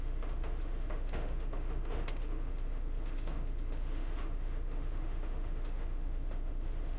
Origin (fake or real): fake